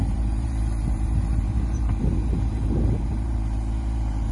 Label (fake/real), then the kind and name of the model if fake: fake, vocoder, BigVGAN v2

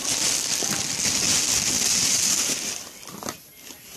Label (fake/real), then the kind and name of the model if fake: real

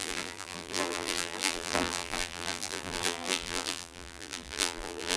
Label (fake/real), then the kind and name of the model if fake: fake, vocoder, BigVGAN v2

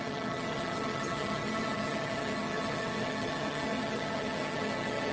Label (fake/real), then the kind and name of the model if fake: fake, vocoder, HiFi-GAN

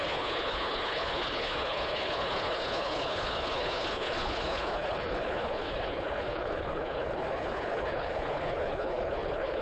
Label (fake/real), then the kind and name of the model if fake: fake, codec, HILCodec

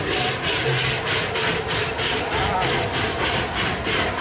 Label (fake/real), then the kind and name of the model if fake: real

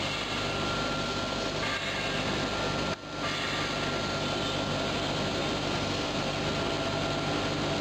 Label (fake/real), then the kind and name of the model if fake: real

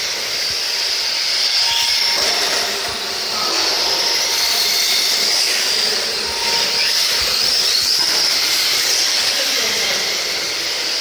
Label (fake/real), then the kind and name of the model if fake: fake, vocoder, BigVGAN v2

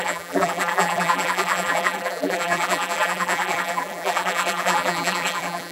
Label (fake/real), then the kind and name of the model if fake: fake, vocoder, BigVGAN v2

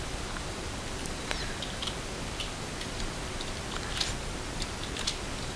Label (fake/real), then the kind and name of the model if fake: real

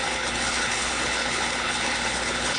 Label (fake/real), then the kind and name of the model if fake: fake, codec, HILCodec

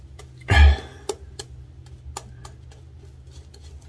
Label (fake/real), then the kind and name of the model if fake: real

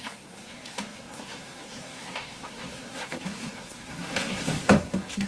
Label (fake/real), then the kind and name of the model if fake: fake, codec, SNAC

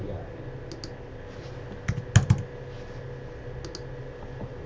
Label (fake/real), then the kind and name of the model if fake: real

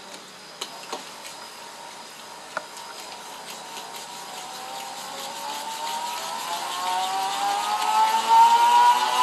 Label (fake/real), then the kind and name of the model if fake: real